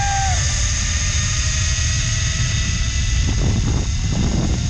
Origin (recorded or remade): recorded